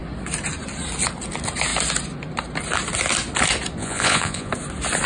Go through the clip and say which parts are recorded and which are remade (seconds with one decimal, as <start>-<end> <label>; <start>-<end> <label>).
0.0-3.8 recorded; 3.8-4.5 remade; 4.5-5.1 recorded